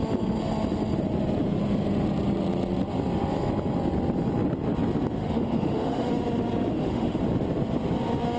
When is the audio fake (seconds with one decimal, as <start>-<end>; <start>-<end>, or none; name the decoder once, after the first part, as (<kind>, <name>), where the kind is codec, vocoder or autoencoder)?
5.2-6.1 (autoencoder, DAC-VAE); 6.7-7.2